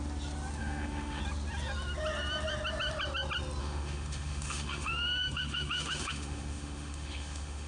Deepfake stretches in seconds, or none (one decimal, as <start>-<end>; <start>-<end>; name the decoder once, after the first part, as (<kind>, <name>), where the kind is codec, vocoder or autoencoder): 0.6-1.2 (autoencoder, DAC-VAE); 3.6-7.7